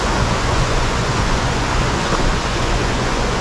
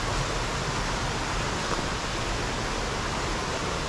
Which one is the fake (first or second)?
first